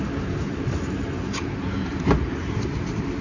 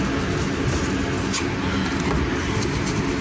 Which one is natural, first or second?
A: second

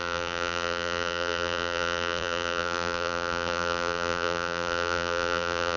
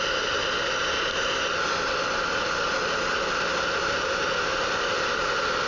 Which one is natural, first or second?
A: second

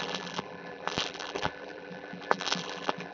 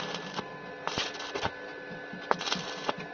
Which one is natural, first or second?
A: second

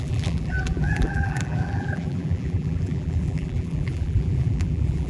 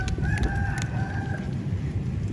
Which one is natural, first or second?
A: second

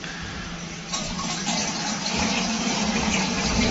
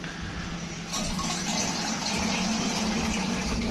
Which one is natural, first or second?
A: second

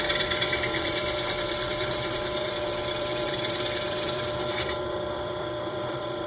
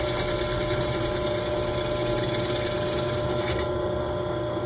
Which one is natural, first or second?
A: second